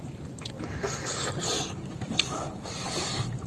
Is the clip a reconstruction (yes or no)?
yes